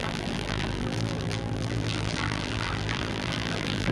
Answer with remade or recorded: remade